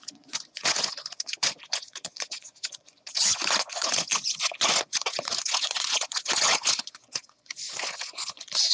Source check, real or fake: fake